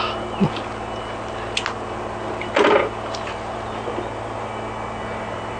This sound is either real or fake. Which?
real